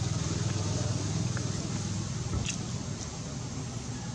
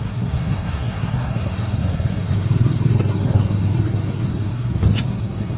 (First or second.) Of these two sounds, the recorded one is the first